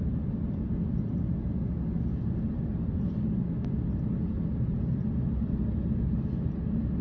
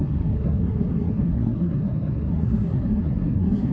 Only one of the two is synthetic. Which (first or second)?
second